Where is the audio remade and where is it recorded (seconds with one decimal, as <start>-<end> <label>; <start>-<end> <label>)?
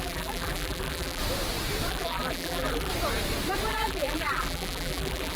0.0-1.2 remade; 1.2-1.9 recorded; 1.9-2.9 remade; 2.9-3.7 recorded; 3.7-5.4 remade